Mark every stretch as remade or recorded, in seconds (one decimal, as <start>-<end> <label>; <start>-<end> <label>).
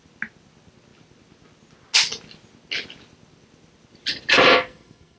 0.0-4.5 recorded; 4.5-5.2 remade